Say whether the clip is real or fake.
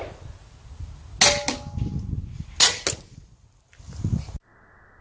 real